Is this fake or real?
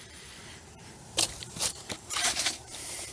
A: fake